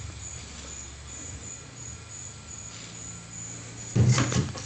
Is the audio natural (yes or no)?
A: yes